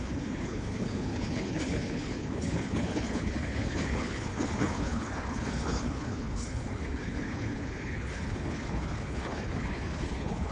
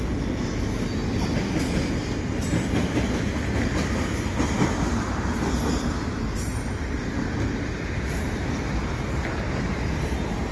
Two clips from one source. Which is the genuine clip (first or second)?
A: second